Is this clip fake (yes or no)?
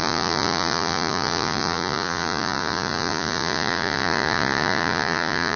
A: yes